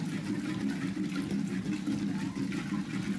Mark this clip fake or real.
real